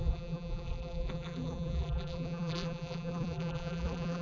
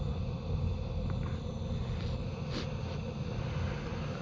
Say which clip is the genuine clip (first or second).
second